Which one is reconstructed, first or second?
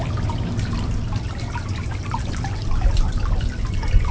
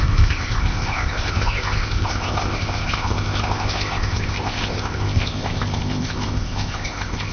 second